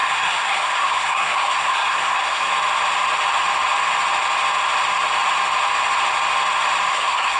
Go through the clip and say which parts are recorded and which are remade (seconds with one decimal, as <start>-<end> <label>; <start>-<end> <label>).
0.0-2.5 remade; 2.5-6.9 recorded; 6.9-7.4 remade